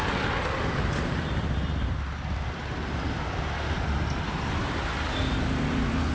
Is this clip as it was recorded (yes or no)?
yes